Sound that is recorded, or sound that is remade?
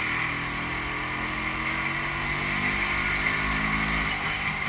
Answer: recorded